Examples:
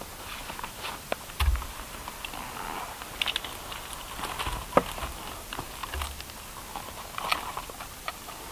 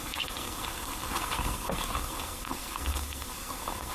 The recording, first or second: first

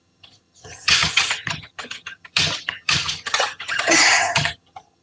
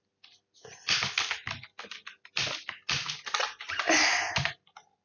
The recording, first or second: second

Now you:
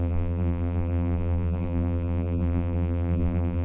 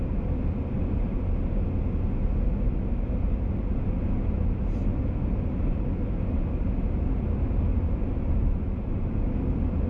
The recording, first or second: second